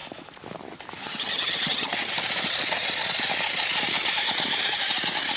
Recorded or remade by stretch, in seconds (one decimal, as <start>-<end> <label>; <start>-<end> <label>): 0.0-1.0 recorded; 1.0-1.9 remade; 1.9-5.4 recorded